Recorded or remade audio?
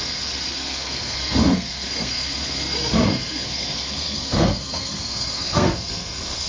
remade